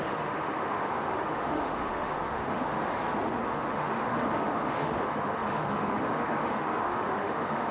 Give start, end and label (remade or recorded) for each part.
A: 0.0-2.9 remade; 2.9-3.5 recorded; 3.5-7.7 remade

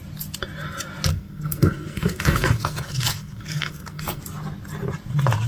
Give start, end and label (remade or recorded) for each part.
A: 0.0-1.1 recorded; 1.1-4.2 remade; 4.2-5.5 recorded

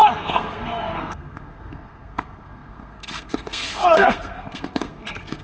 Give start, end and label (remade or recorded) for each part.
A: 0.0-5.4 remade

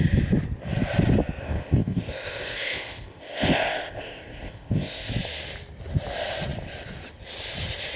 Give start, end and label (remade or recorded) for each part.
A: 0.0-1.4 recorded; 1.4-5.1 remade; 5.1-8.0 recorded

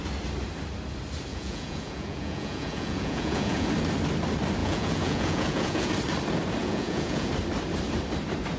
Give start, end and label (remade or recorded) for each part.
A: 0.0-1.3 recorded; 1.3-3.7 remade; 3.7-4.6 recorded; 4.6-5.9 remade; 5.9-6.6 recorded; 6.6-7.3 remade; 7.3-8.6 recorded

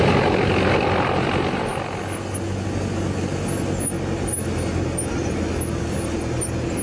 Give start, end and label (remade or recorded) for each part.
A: 0.0-6.8 recorded

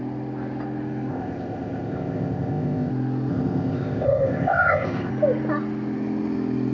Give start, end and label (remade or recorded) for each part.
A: 0.0-1.1 recorded; 1.1-2.9 remade; 2.9-3.3 recorded; 3.3-5.1 remade; 5.1-6.7 recorded